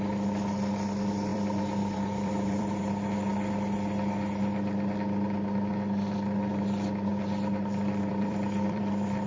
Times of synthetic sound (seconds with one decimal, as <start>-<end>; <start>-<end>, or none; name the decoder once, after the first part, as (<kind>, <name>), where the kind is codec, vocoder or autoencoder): 1.3-2.8 (vocoder, BigVGAN v2); 7.1-9.3